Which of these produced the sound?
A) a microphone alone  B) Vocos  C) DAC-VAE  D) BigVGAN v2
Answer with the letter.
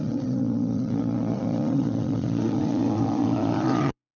B